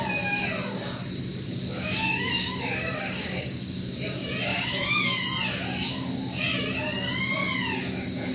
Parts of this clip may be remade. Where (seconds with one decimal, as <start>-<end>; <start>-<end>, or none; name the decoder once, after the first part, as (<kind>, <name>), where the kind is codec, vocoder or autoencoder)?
1.3-3.9 (codec, DAC); 4.5-5.1